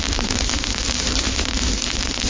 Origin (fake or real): fake